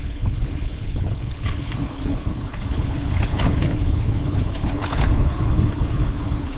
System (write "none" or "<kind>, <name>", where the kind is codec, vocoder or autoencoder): codec, HILCodec